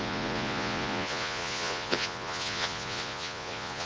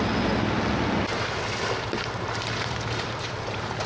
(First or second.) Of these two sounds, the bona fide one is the second